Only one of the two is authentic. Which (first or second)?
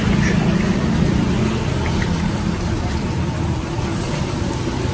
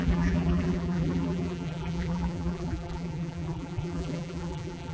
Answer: first